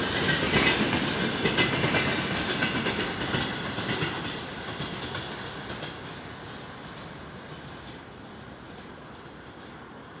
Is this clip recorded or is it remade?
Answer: recorded